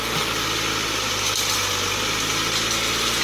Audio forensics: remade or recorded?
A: recorded